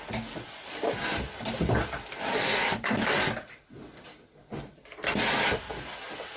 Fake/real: real